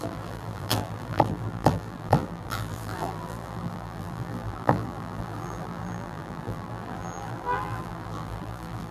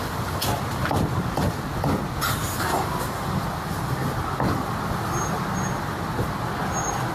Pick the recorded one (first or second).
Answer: second